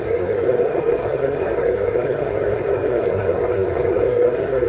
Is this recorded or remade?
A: remade